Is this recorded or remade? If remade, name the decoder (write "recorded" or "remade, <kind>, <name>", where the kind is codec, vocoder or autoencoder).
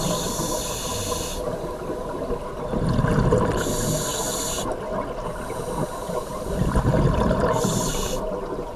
recorded